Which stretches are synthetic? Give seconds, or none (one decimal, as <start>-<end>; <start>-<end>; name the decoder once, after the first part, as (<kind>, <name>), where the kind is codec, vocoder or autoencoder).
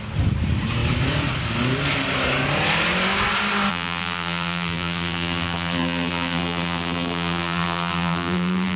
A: 3.7-8.8 (vocoder, BigVGAN v2)